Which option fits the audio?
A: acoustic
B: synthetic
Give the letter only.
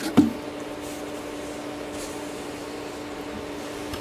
A